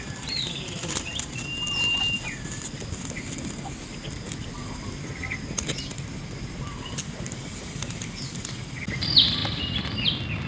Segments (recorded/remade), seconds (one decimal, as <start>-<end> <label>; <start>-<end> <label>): 0.0-10.5 recorded